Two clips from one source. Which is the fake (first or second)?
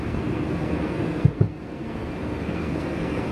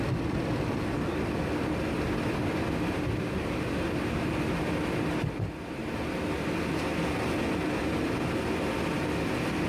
first